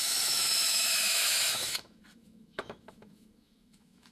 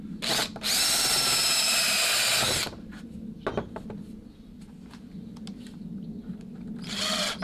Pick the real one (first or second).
second